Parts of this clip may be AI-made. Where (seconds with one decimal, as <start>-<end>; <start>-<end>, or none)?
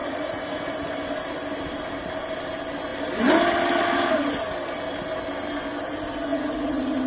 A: 0.0-0.7; 6.3-7.1